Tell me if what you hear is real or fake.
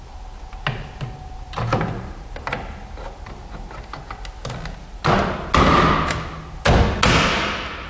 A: real